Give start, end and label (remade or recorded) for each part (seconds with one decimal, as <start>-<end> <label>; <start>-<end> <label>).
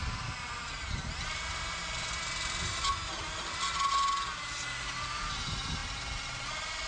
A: 0.0-6.9 recorded